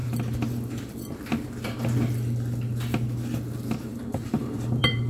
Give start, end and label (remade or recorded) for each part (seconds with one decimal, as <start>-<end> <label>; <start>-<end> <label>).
0.0-3.9 recorded; 3.9-5.1 remade